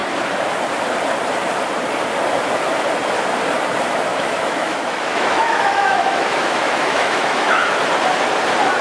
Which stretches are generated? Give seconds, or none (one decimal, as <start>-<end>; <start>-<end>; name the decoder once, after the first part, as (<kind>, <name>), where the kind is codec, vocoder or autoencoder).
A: 4.1-7.8 (autoencoder, DAC-VAE)